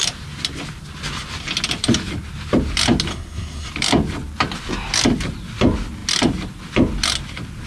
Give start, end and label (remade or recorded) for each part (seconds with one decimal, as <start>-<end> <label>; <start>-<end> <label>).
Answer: 0.0-3.1 recorded; 3.1-3.7 remade; 3.7-7.7 recorded